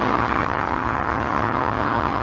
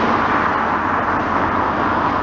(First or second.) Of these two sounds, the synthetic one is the first